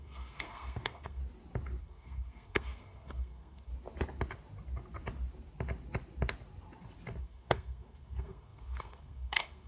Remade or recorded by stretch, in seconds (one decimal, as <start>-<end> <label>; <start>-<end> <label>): 0.0-1.2 remade; 1.2-1.8 recorded; 1.8-3.7 remade; 3.7-7.2 recorded; 7.2-9.7 remade

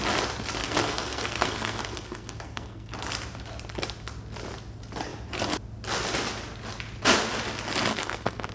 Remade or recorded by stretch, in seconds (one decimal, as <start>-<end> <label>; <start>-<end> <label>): 0.0-0.6 recorded; 0.6-2.9 remade; 2.9-7.9 recorded; 7.9-8.5 remade

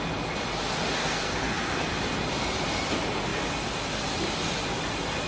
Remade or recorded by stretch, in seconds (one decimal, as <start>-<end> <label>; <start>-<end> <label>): 0.0-1.0 recorded; 1.0-1.9 remade; 1.9-5.3 recorded

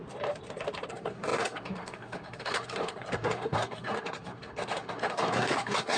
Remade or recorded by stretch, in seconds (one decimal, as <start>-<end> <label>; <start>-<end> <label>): 0.0-0.9 recorded; 0.9-6.0 remade

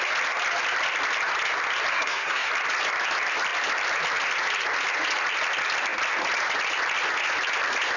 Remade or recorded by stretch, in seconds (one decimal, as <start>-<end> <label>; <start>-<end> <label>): 0.0-1.9 recorded; 1.9-2.5 remade; 2.5-8.0 recorded

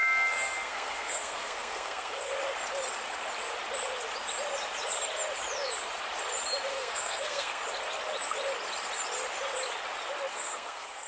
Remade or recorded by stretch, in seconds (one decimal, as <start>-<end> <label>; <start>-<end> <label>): 0.0-2.3 remade; 2.3-6.7 recorded; 6.7-7.6 remade; 7.6-10.3 recorded; 10.3-11.1 remade